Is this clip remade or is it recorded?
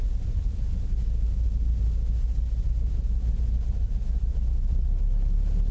recorded